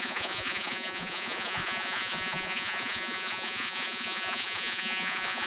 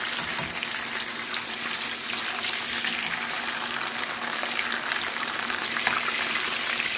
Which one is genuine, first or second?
second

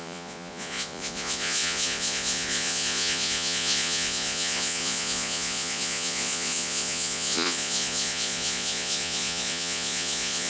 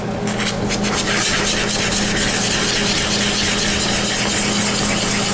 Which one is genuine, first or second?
second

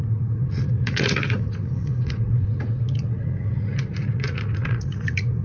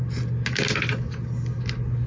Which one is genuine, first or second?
second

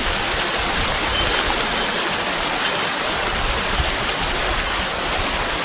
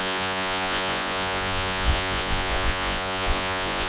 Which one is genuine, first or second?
first